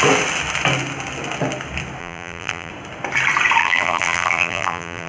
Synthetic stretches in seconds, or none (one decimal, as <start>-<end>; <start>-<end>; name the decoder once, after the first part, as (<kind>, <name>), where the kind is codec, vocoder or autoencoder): 2.0-2.7 (vocoder, BigVGAN v2); 3.6-5.1